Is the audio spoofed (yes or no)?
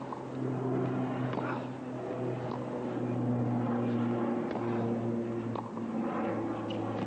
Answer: no